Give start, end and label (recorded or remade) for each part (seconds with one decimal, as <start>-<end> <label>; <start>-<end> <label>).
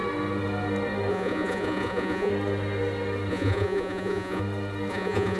0.0-1.1 recorded; 1.1-2.3 remade; 2.3-3.3 recorded; 3.3-4.4 remade; 4.4-4.9 recorded; 4.9-5.4 remade